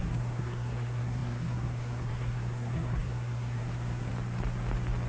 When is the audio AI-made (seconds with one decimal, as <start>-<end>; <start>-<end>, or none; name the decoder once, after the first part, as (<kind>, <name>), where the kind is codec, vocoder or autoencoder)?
0.0-4.1 (codec, SNAC)